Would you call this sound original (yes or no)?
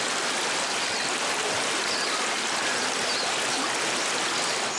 yes